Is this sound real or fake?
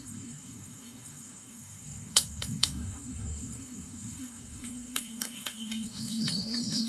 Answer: fake